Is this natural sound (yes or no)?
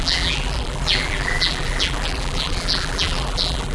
no